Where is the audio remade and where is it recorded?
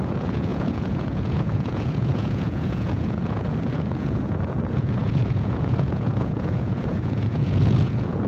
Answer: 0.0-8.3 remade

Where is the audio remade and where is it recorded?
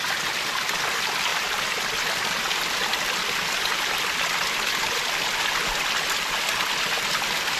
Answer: 0.0-1.3 recorded; 1.3-1.8 remade; 1.8-7.6 recorded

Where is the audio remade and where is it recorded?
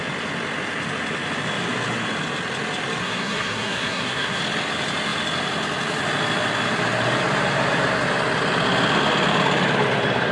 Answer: 0.0-3.0 recorded; 3.0-4.4 remade; 4.4-10.3 recorded